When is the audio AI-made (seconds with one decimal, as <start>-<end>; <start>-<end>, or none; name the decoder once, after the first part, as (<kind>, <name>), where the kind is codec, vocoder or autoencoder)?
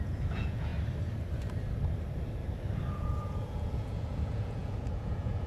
0.0-0.7 (vocoder, Vocos); 2.9-5.5